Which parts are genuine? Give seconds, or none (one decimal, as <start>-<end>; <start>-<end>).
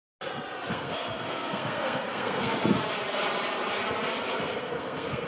0.0-0.7; 2.6-4.6